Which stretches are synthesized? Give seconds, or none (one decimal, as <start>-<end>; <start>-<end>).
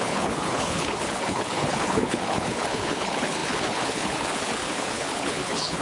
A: 0.0-5.8